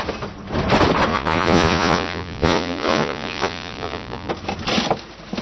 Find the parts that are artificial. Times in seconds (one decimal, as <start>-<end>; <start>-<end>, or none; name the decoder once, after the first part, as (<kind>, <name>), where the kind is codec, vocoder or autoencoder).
1.1-4.3 (vocoder, Vocos)